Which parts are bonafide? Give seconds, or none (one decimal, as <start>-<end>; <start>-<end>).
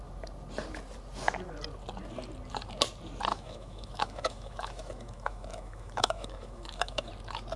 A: 0.0-3.3; 7.1-7.6